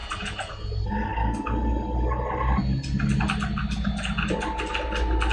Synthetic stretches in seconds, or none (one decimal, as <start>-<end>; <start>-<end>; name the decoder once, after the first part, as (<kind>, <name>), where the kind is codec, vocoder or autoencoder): 0.0-0.5 (vocoder, BigVGAN v2)